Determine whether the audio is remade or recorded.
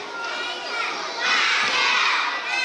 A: recorded